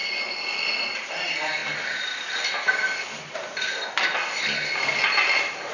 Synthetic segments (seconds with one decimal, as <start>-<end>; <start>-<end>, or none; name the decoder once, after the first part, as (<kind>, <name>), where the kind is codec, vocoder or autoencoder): none